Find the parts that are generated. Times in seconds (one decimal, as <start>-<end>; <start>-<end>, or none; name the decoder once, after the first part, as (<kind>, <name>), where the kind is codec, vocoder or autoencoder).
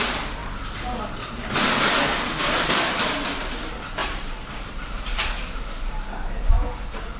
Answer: 4.0-6.5 (vocoder, BigVGAN v2)